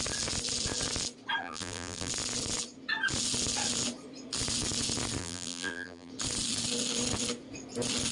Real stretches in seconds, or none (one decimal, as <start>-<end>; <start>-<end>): 0.0-1.4; 2.1-5.2; 6.1-8.1